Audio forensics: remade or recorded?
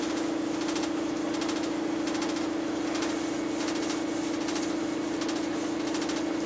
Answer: recorded